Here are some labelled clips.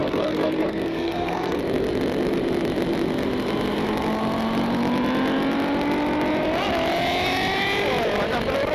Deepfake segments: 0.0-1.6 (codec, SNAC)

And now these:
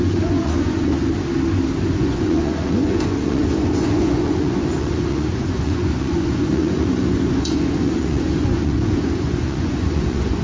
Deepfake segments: 0.0-0.9 (vocoder, Vocos); 1.9-10.4

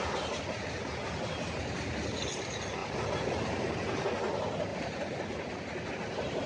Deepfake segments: none

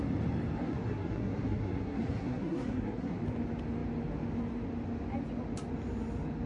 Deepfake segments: 0.6-3.2 (codec, SNAC)

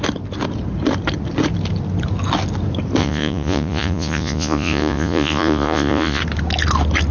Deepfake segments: 3.0-6.2 (vocoder, Vocos)

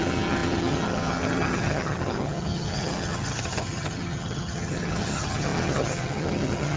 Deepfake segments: 0.0-6.8 (vocoder, HiFi-GAN)

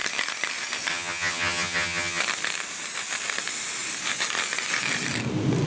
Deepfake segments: 0.9-2.2 (vocoder, HiFi-GAN)